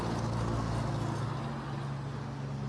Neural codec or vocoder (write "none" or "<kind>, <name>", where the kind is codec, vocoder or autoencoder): none